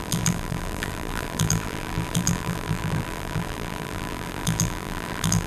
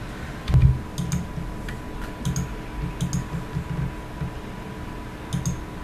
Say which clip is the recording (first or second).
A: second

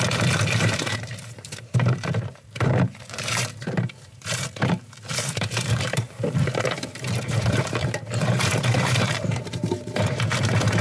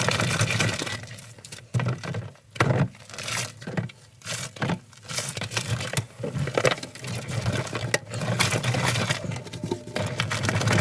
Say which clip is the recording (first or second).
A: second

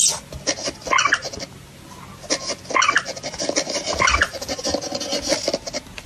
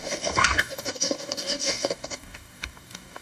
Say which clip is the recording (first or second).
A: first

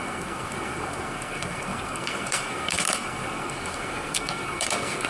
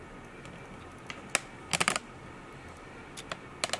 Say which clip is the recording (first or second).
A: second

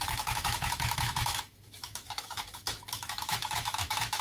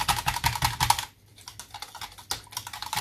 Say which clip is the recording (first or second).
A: second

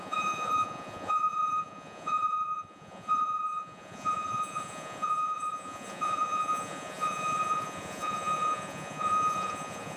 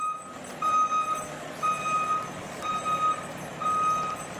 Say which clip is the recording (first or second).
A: second